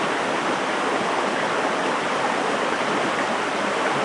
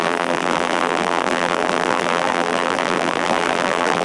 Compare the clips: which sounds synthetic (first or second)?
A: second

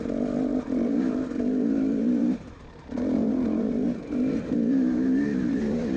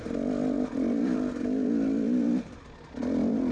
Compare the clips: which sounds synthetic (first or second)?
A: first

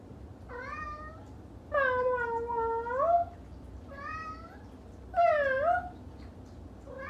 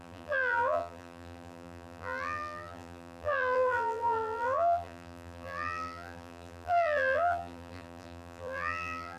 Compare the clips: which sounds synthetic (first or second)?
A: second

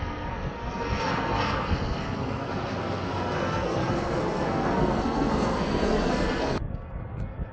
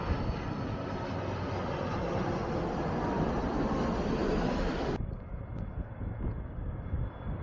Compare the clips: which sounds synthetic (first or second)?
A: first